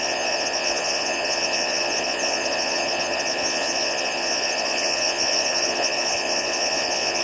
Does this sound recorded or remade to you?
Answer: remade